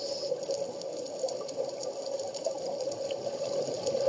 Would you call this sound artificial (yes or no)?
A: no